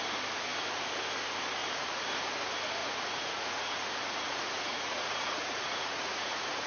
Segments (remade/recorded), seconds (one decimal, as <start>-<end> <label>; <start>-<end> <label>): 0.0-1.6 recorded; 1.6-2.2 remade; 2.2-2.8 recorded; 2.8-6.7 remade